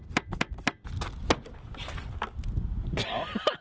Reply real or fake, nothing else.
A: real